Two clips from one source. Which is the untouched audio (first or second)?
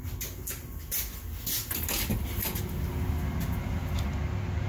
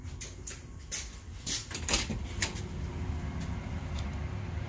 first